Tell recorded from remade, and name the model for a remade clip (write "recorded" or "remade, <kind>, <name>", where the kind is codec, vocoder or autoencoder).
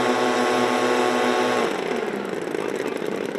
recorded